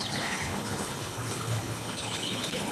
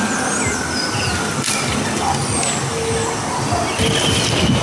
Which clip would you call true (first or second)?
second